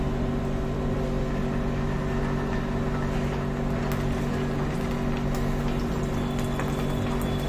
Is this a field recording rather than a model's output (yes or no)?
yes